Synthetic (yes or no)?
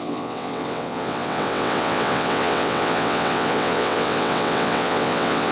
yes